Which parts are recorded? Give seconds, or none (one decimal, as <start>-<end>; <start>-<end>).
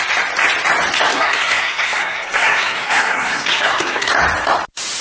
0.0-1.1; 4.1-5.0